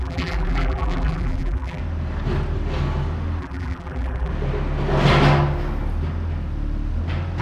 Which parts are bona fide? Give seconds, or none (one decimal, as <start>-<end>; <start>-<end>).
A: 1.8-3.4; 4.3-7.4